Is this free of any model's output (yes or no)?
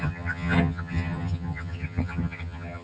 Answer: no